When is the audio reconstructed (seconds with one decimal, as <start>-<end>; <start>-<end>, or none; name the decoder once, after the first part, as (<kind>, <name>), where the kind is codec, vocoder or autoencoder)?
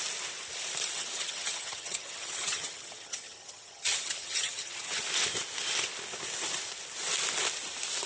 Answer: 1.0-5.0 (vocoder, HiFi-GAN)